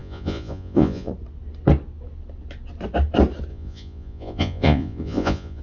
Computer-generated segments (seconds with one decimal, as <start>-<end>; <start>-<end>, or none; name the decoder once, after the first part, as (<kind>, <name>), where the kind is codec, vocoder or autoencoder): 0.0-1.1 (vocoder, Vocos); 3.5-5.6